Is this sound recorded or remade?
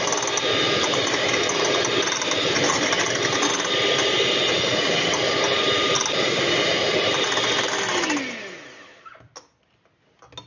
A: recorded